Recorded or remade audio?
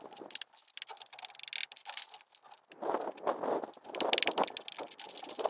recorded